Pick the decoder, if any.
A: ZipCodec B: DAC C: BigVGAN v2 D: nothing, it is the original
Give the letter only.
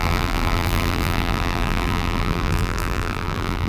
C